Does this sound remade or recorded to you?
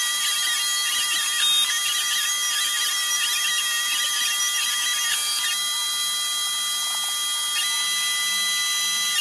recorded